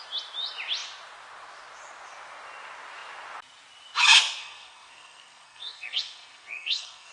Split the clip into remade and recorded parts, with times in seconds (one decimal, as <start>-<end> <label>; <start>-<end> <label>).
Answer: 0.0-4.4 recorded; 4.4-7.1 remade